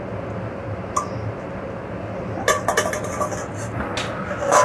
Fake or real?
real